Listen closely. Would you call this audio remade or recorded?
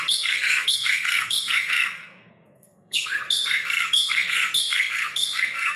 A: remade